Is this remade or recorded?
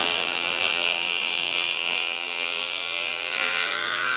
remade